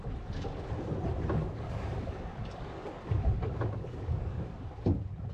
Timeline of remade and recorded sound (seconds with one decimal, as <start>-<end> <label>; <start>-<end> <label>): 0.0-1.4 recorded; 1.4-4.6 remade; 4.6-5.3 recorded